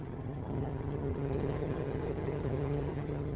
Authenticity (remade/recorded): remade